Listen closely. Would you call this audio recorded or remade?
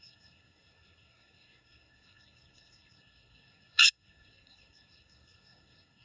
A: remade